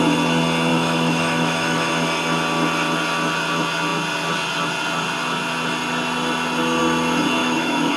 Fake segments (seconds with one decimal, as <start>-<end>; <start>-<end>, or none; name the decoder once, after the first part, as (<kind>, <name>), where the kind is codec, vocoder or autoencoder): 0.7-1.9 (autoencoder, DAC-VAE); 7.4-8.0